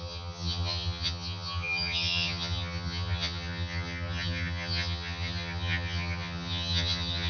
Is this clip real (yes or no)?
no